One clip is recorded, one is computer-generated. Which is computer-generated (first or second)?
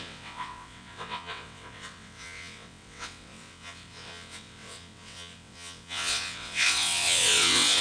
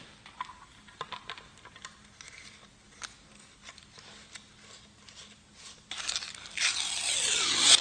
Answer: first